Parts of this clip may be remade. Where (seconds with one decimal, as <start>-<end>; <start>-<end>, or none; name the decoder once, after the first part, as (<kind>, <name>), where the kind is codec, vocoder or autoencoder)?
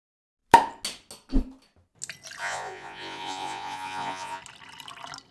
2.4-4.4 (vocoder, Vocos)